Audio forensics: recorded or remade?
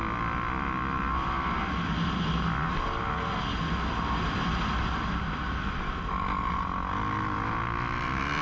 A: recorded